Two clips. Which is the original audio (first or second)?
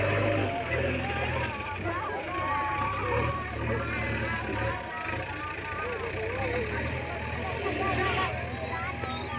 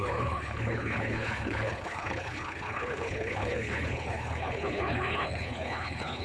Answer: first